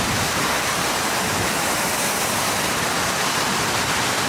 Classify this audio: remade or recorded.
recorded